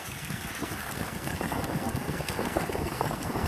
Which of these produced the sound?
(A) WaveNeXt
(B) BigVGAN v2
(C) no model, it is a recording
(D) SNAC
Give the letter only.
D